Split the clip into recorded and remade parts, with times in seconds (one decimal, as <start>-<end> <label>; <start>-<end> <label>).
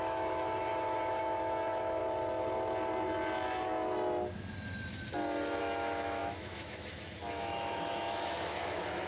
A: 0.0-2.0 remade; 2.0-5.6 recorded; 5.6-9.1 remade